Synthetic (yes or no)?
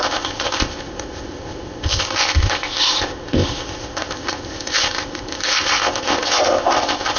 yes